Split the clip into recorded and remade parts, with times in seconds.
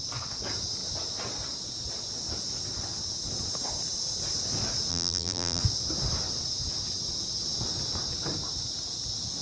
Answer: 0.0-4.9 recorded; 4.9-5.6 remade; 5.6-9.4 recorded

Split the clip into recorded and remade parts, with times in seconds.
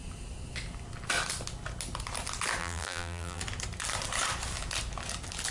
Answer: 0.0-2.6 recorded; 2.6-3.4 remade; 3.4-5.5 recorded